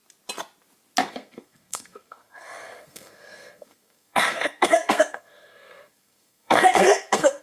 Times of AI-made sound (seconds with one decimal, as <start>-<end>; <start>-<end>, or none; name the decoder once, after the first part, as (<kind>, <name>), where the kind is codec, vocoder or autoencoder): 1.1-7.4 (codec, SNAC)